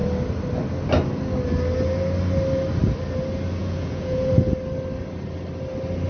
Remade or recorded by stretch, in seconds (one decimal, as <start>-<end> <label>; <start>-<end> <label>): 0.0-3.6 recorded; 3.6-4.3 remade; 4.3-6.1 recorded